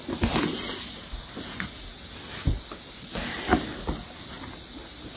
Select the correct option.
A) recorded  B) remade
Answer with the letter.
A